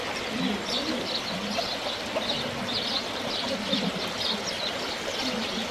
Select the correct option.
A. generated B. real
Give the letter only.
B